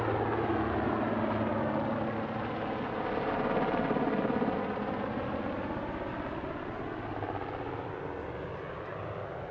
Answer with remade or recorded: recorded